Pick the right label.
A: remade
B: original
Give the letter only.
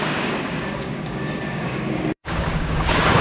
A